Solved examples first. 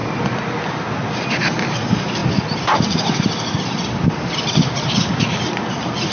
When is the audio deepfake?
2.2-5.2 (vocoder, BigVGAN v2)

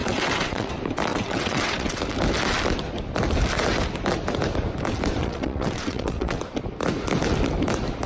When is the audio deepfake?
0.0-0.7 (vocoder, WaveNeXt); 1.1-2.0; 5.2-6.4

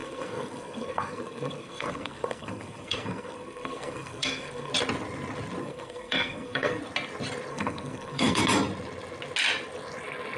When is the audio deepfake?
0.0-4.7 (codec, SNAC); 5.6-6.8; 7.5-8.4